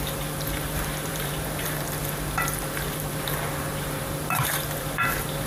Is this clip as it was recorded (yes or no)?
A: no